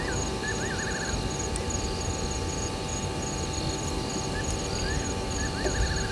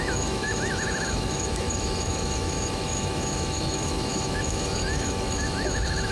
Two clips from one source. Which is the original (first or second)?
first